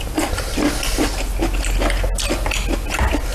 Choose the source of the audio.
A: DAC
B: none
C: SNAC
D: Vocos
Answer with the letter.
B